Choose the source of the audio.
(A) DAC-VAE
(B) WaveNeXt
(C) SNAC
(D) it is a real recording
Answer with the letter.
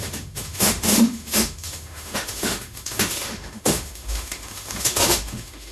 A